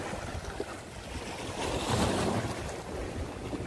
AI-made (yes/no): no